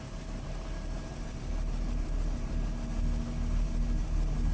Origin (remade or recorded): recorded